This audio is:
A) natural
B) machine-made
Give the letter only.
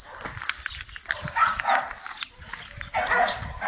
A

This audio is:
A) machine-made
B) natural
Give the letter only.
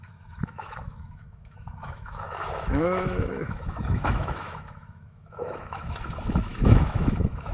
A